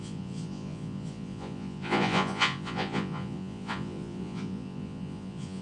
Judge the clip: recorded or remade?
remade